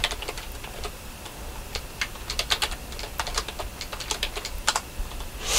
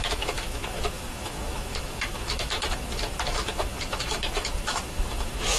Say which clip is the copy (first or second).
second